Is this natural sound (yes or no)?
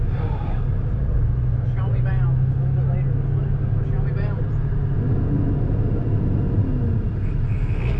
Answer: yes